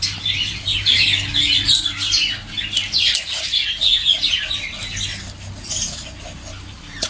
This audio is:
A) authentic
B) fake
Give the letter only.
A